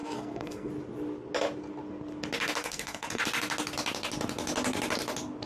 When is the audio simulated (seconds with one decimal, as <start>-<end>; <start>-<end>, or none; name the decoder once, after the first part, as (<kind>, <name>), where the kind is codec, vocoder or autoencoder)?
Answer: 0.0-0.7 (codec, SNAC); 2.6-3.2